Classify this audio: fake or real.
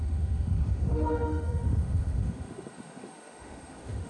fake